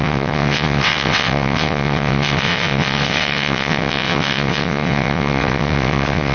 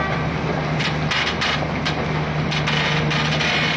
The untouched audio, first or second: second